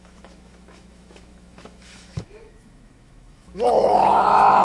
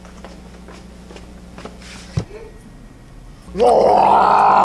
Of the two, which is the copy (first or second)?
first